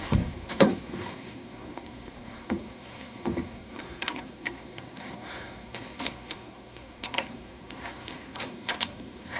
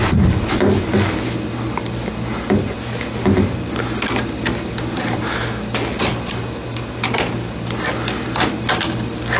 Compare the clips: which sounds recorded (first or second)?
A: second